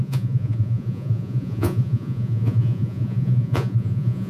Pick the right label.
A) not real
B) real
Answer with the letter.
A